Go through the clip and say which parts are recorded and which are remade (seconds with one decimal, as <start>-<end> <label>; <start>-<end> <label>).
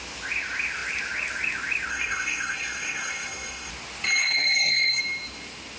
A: 0.0-1.9 recorded; 1.9-3.7 remade; 3.7-4.2 recorded; 4.2-5.0 remade; 5.0-5.8 recorded